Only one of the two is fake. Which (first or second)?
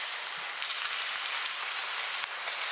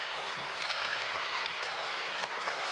second